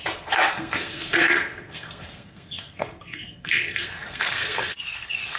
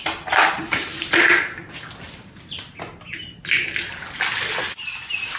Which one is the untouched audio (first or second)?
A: second